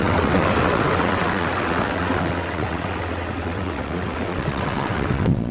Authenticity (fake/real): fake